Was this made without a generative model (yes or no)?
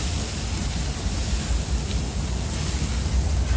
yes